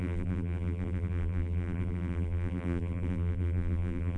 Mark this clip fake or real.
fake